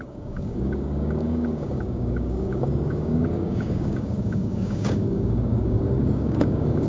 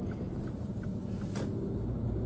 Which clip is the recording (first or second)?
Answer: second